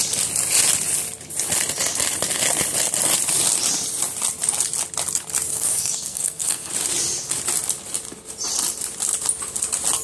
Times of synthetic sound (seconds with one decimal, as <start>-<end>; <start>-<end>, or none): 5.5-6.7